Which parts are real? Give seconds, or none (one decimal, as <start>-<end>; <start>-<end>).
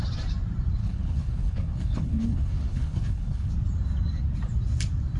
0.0-0.8; 3.5-5.2